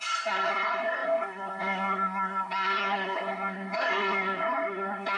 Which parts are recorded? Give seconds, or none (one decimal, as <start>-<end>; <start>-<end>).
none